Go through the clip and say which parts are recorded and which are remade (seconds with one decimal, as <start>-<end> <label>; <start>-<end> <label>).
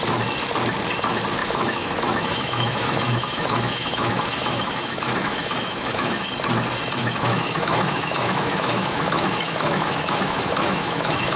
0.0-1.4 recorded; 1.4-6.3 remade; 6.3-7.0 recorded; 7.0-11.4 remade